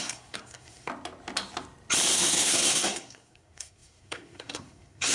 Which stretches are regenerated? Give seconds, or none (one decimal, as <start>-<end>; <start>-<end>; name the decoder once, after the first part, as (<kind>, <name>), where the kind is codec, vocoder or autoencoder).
0.0-0.9 (codec, SNAC); 2.1-5.1